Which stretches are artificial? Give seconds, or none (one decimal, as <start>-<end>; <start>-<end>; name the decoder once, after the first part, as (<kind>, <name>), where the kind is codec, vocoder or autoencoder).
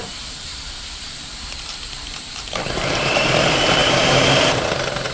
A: 0.0-5.1 (vocoder, BigVGAN v2)